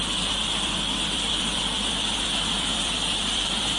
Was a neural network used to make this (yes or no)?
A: yes